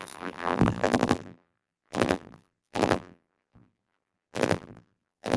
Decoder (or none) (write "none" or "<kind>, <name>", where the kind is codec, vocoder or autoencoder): vocoder, BigVGAN v2